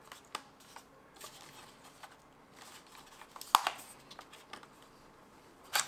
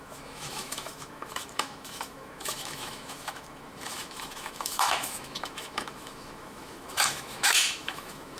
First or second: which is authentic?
first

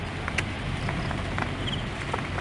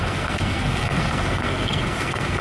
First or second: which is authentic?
first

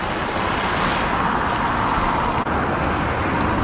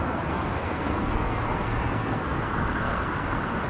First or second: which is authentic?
first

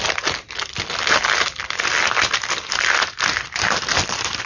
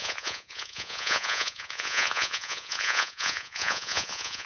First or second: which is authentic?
first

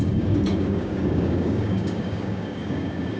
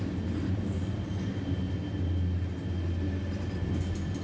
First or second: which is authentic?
second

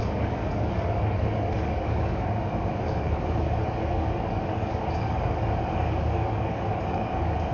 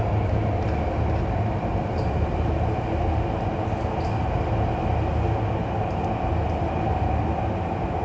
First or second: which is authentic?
second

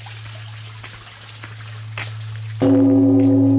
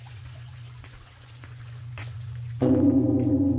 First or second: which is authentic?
first